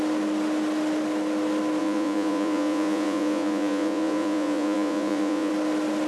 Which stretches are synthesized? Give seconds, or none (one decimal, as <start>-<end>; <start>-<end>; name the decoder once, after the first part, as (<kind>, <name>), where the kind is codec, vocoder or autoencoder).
1.8-5.5 (vocoder, Vocos)